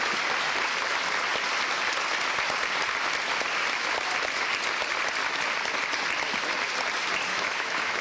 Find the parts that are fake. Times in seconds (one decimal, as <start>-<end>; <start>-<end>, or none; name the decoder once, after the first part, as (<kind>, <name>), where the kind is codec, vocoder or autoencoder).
7.3-8.0 (autoencoder, DAC-VAE)

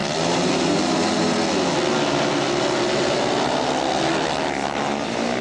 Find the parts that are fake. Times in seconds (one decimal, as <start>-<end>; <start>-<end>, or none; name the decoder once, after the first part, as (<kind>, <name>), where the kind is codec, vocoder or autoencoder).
none

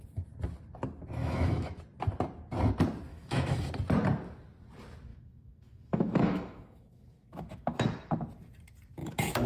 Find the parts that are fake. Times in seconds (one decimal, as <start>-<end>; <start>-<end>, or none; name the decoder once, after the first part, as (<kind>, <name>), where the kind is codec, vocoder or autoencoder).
1.2-1.8 (autoencoder, DAC-VAE); 3.1-3.7; 5.1-7.8; 9.0-9.5